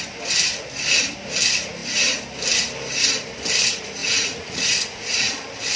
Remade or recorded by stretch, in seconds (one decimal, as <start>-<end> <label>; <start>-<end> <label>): 0.0-4.0 recorded; 4.0-5.3 remade; 5.3-5.8 recorded